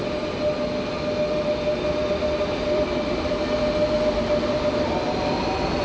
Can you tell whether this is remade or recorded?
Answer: recorded